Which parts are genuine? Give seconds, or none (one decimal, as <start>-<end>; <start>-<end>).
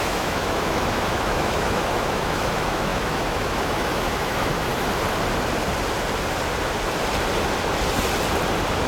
4.7-8.9